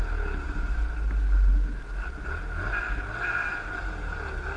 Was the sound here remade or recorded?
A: recorded